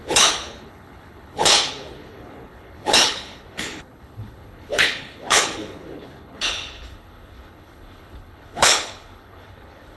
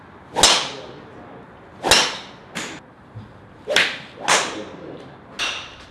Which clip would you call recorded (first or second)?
second